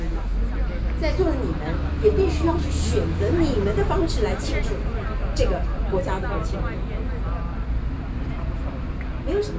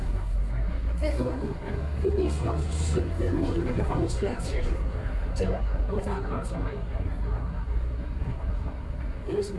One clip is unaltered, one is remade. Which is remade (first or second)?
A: second